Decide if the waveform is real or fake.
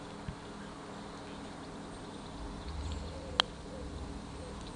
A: real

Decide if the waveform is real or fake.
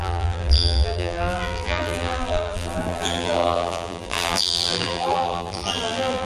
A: fake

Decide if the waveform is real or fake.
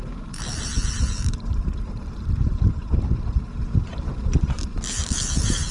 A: fake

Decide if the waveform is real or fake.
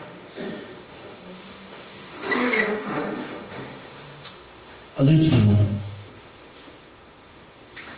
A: fake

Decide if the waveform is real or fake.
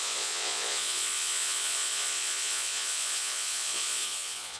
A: fake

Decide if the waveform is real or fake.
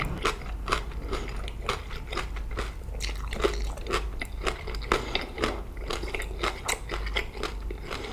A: real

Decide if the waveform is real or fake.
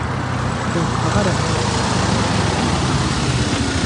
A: real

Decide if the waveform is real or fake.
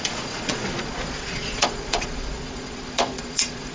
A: fake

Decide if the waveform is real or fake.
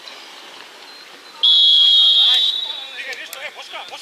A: real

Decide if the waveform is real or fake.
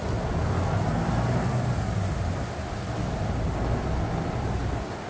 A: real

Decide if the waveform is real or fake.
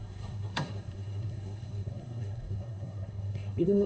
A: fake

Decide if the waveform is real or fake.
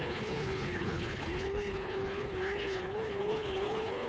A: fake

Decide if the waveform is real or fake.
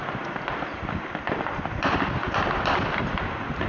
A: real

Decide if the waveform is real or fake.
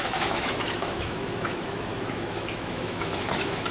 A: fake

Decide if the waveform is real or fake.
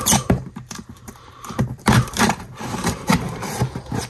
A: fake